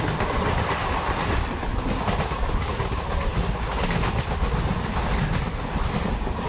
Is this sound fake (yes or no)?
no